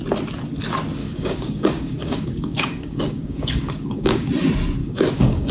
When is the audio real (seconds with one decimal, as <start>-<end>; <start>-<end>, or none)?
0.0-1.0; 4.3-4.8